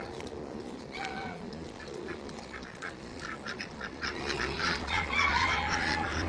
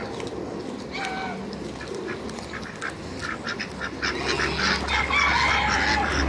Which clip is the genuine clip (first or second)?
second